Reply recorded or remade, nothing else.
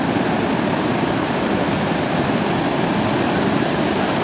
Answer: recorded